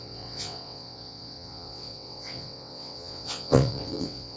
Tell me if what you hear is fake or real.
fake